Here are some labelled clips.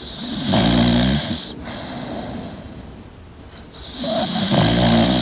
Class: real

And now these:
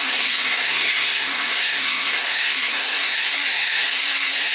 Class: fake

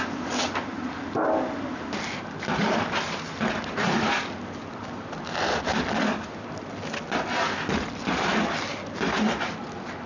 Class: real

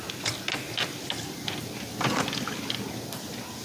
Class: real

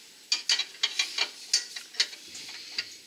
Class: real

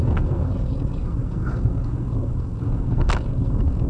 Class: fake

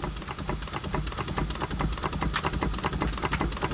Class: real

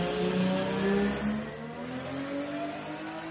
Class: real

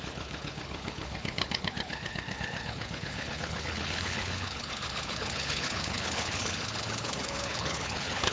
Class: fake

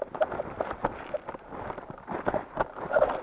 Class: real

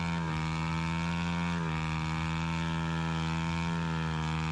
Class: real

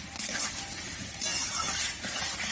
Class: real